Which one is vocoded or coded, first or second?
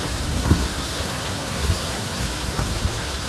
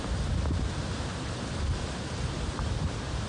first